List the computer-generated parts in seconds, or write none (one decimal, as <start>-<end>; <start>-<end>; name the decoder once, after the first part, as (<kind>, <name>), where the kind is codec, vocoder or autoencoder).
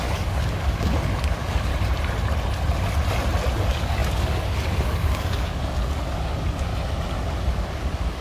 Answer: 0.0-1.7 (codec, DAC); 3.6-6.7; 7.2-8.2